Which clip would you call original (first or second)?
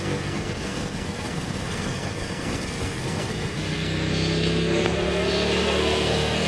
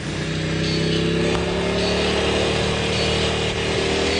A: second